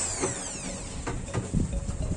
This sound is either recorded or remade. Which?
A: recorded